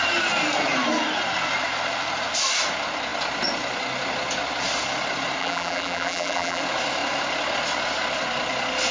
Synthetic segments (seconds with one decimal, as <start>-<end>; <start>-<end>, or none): 5.4-6.6

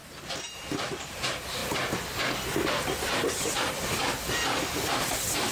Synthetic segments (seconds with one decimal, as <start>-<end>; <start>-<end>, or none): 0.0-1.6; 3.1-5.5

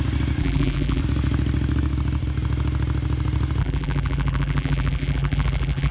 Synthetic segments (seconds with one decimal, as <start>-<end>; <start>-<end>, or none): 0.4-1.0; 3.6-5.9

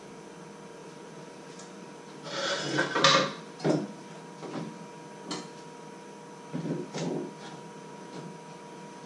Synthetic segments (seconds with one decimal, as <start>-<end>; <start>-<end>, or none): 0.8-4.2

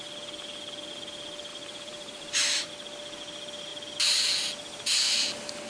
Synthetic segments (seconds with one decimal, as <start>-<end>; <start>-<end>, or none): 1.5-2.7

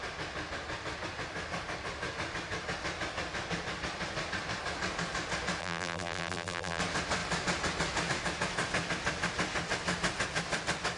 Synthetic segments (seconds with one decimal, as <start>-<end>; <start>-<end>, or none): 5.6-6.8